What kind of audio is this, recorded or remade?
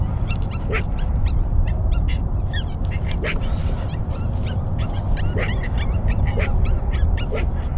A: recorded